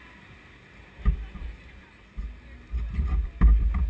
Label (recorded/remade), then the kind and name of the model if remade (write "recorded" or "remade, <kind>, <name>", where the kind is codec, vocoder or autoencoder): recorded